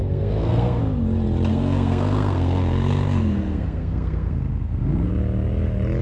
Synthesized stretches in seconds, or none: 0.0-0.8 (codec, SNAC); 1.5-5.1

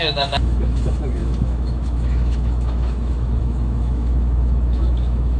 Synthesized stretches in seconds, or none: 0.0-5.4 (autoencoder, DAC-VAE)

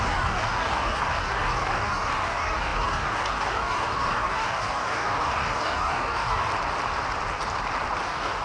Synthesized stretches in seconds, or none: 0.0-6.5 (codec, DAC); 8.0-8.4